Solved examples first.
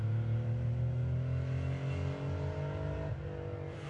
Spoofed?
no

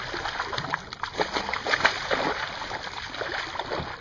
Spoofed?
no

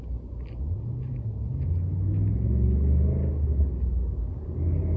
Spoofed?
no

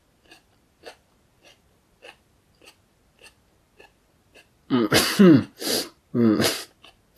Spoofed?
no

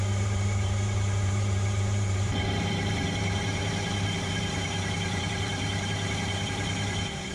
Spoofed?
yes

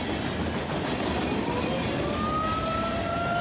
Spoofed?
no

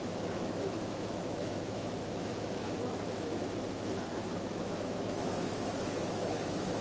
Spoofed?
yes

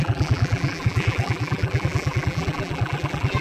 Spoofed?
yes